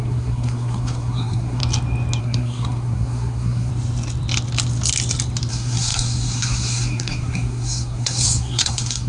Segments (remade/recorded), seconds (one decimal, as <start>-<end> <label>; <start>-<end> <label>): 0.0-1.6 remade; 1.6-2.2 recorded; 2.2-3.7 remade; 3.7-5.5 recorded; 5.5-9.1 remade